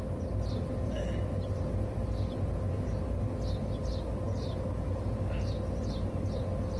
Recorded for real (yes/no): yes